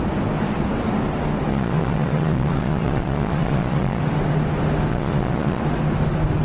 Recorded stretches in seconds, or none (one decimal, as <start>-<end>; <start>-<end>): 0.0-1.5; 4.0-4.9; 5.6-6.4